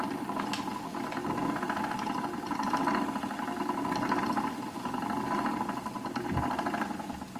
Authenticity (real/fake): real